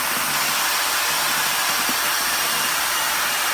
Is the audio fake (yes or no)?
no